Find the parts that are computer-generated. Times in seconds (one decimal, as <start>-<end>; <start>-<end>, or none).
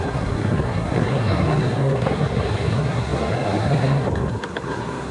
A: 0.0-5.1